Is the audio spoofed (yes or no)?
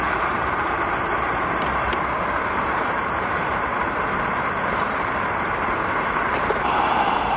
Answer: yes